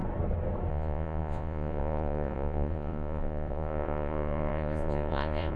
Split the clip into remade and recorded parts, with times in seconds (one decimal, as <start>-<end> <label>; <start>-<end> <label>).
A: 0.0-0.7 recorded; 0.7-5.6 remade